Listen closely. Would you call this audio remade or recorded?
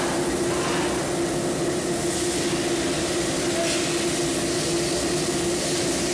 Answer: recorded